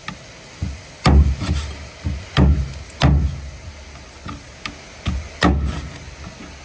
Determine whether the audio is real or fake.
real